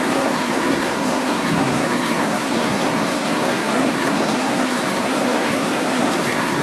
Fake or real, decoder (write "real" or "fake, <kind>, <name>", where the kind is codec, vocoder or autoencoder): fake, codec, SNAC